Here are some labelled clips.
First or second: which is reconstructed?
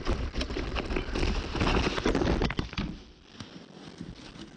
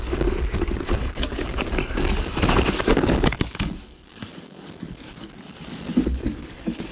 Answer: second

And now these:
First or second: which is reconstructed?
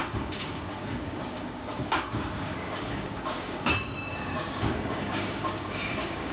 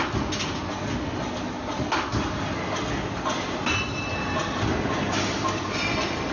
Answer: first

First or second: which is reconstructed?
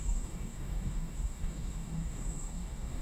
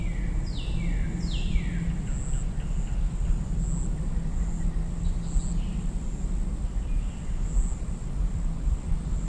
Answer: first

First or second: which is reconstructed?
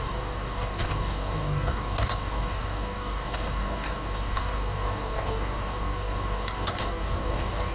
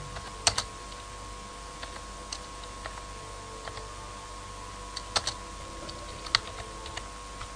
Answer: first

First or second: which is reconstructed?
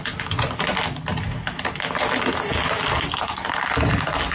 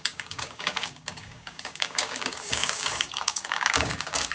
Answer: second